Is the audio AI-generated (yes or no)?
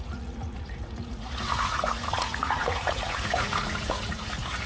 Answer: yes